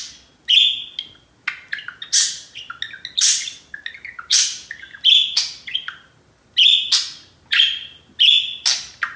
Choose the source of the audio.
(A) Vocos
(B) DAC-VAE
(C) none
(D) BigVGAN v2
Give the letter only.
C